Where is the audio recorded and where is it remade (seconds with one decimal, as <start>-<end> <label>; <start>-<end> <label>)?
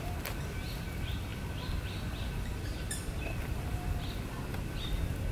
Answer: 0.0-5.3 recorded